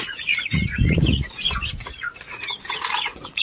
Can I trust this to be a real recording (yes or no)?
no